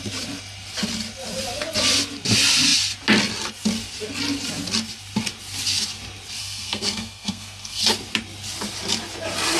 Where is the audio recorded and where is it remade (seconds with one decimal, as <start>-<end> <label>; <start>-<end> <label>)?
0.0-6.4 recorded; 6.4-7.8 remade; 7.8-9.6 recorded